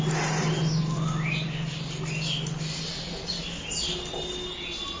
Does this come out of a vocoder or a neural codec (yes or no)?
no